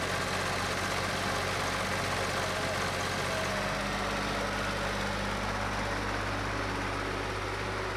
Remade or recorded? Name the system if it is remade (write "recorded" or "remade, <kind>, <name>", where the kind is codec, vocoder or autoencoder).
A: recorded